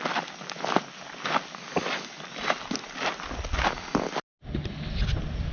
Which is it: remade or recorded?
recorded